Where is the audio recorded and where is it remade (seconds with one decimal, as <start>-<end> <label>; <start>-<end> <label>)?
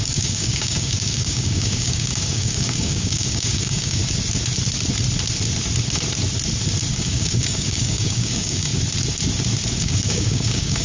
0.0-4.0 remade; 4.0-6.9 recorded; 6.9-8.7 remade; 8.7-9.8 recorded; 9.8-10.8 remade